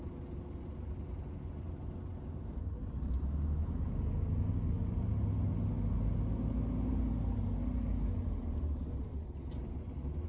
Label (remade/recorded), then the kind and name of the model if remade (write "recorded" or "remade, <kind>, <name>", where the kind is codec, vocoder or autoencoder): recorded